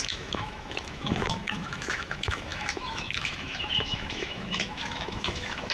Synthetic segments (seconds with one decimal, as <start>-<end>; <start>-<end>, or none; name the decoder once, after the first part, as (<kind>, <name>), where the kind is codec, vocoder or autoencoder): 0.0-5.7 (autoencoder, DAC-VAE)